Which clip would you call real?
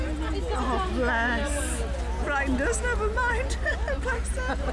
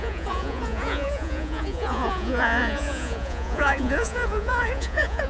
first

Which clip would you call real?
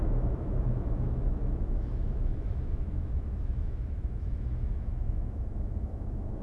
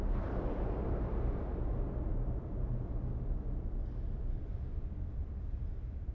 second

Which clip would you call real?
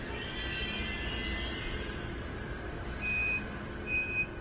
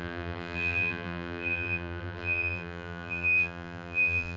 first